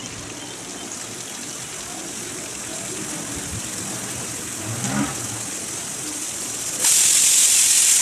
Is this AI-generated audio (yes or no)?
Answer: no